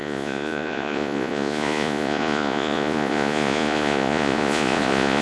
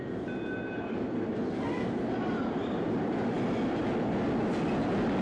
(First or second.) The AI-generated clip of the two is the first